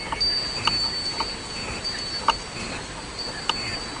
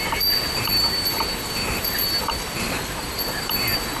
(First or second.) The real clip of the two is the first